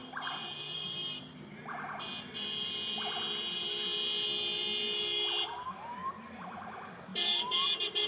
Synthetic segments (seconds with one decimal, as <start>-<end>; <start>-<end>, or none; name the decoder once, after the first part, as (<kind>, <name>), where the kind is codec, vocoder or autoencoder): 0.0-1.3 (vocoder, BigVGAN v2); 7.1-8.1